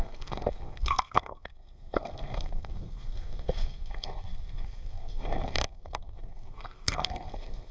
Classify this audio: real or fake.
fake